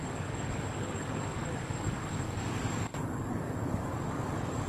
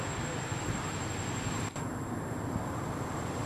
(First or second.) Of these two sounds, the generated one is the first